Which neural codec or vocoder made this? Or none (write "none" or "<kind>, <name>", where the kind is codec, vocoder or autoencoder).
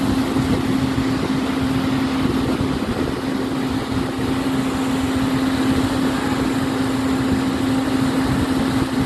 none